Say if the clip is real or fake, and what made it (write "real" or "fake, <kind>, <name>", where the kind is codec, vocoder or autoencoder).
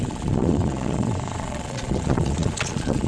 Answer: fake, vocoder, Vocos